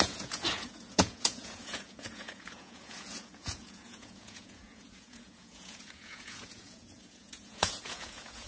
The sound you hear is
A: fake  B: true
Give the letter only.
A